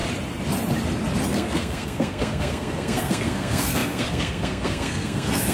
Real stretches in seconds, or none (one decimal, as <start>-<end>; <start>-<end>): 0.0-1.3